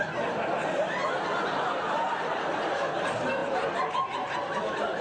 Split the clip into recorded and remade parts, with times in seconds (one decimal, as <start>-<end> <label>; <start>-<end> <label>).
0.0-5.0 recorded